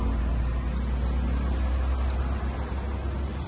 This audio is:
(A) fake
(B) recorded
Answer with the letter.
B